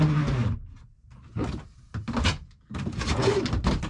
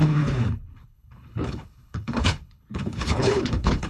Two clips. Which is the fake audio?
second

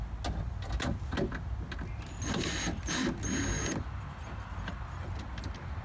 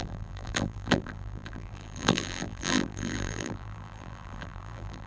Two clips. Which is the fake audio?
second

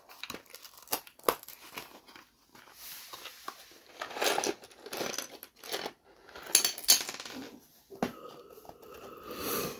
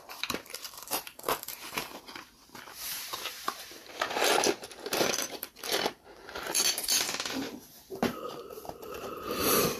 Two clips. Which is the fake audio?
second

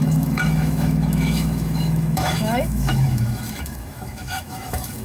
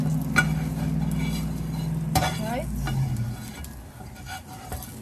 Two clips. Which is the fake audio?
first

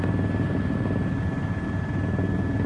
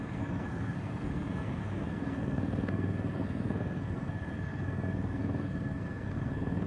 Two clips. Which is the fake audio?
second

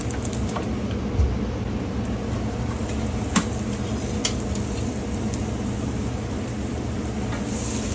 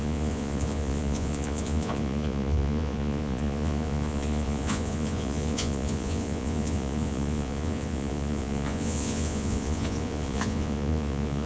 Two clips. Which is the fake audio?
second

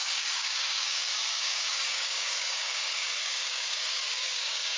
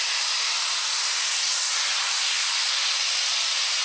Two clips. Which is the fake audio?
first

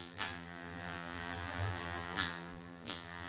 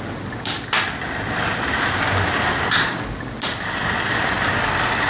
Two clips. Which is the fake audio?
first